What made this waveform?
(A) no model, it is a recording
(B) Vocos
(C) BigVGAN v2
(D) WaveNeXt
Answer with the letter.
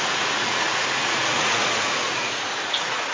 B